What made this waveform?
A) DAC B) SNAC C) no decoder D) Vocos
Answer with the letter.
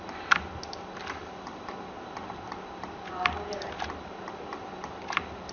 C